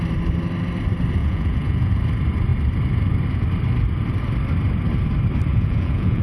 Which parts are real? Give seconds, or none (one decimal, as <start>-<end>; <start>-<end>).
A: 0.0-1.2; 1.9-5.5